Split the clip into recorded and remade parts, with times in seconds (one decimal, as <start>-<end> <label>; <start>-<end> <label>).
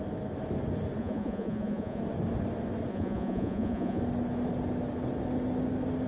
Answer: 0.0-1.0 recorded; 1.0-2.0 remade; 2.0-2.9 recorded; 2.9-4.0 remade; 4.0-6.1 recorded